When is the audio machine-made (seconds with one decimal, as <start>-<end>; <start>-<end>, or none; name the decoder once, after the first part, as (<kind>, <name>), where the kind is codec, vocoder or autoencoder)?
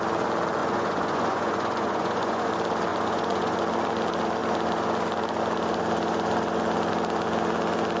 0.6-2.5 (vocoder, Vocos); 2.9-3.6